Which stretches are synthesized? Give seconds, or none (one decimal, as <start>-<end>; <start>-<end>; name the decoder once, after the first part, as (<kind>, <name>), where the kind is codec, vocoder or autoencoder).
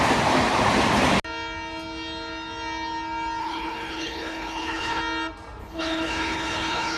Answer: 3.4-5.0 (codec, HILCodec); 5.6-7.0